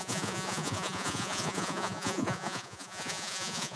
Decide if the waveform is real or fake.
fake